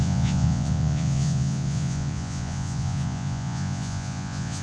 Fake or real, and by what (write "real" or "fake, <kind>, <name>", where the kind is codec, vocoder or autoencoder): fake, vocoder, Vocos